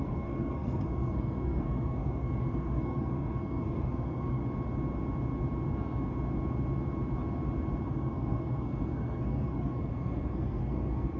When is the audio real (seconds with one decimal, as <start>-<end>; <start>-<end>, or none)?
4.4-7.9